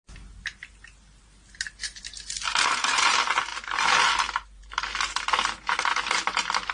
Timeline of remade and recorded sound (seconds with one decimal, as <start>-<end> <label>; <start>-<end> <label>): 0.0-0.6 recorded; 0.6-3.1 remade; 3.1-6.7 recorded